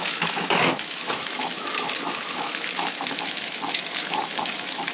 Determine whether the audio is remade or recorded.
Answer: remade